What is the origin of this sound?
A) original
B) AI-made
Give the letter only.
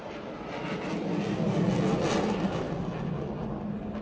A